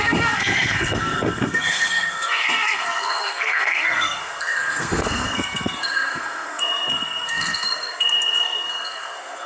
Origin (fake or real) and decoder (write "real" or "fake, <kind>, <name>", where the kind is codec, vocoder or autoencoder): fake, codec, SNAC